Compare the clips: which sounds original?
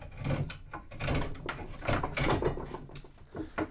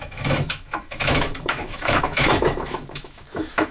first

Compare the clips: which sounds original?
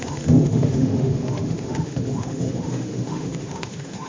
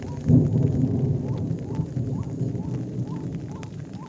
second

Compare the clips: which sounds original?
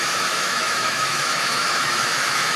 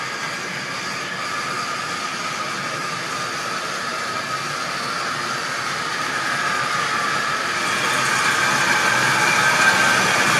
second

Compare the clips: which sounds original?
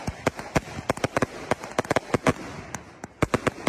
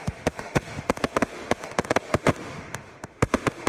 first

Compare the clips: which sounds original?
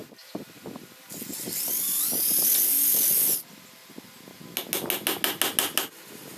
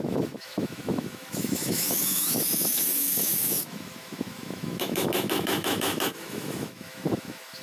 first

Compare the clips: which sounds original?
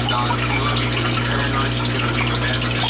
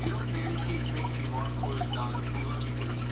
first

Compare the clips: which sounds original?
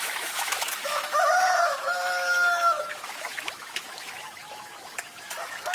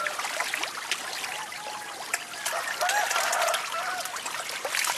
second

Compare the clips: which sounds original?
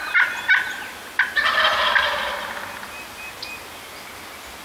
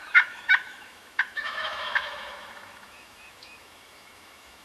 first